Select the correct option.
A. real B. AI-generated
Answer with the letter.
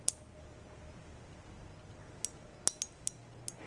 A